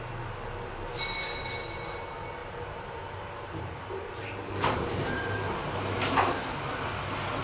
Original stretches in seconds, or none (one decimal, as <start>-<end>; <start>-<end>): 0.0-2.4; 5.8-7.4